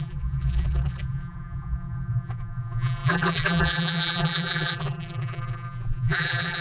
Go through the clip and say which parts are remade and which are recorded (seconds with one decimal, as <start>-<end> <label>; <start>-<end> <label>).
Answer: 0.0-6.6 remade